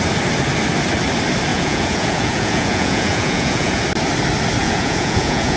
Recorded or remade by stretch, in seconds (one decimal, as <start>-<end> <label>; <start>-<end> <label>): 0.0-1.5 recorded; 1.5-3.8 remade; 3.8-4.6 recorded; 4.6-5.6 remade